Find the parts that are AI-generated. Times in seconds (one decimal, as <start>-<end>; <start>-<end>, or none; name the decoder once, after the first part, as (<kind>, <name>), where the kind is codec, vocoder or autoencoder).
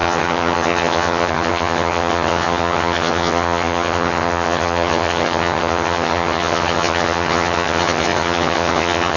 0.0-9.2 (vocoder, HiFi-GAN)